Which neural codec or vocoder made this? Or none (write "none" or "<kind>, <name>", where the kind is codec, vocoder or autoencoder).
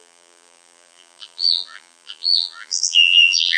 vocoder, BigVGAN v2